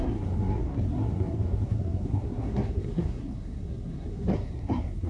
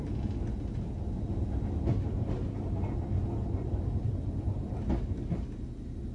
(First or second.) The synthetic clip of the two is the first